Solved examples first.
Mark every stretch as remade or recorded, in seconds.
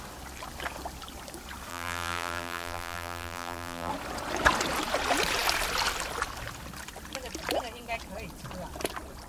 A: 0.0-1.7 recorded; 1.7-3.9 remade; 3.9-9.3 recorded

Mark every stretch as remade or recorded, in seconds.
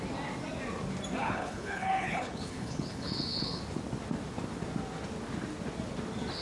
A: 0.0-1.2 recorded; 1.2-3.6 remade; 3.6-6.4 recorded